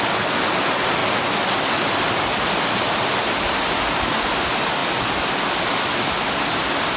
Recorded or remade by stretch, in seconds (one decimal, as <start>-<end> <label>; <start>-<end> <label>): 0.0-7.0 recorded